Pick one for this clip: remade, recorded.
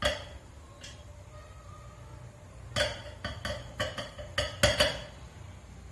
recorded